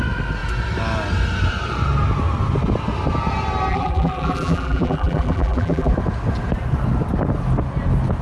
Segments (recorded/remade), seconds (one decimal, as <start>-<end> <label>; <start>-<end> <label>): 0.0-3.7 recorded; 3.7-5.9 remade; 5.9-8.2 recorded